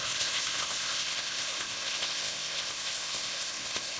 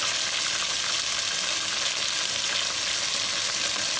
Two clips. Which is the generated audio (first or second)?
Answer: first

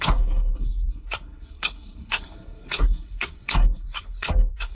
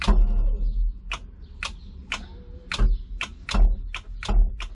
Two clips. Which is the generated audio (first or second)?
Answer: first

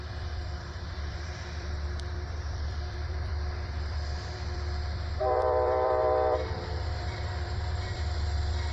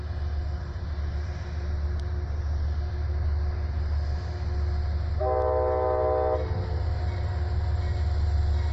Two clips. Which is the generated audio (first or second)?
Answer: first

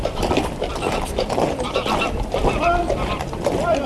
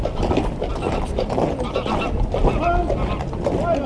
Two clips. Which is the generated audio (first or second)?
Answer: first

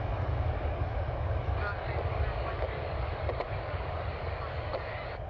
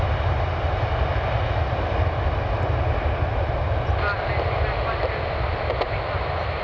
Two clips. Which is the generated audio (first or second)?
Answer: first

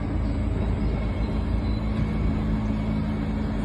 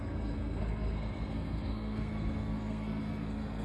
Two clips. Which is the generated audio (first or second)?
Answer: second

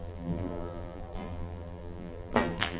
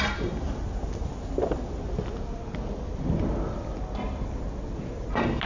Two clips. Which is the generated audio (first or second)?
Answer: first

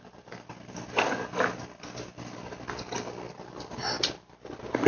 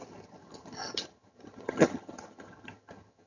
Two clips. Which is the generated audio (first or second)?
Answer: second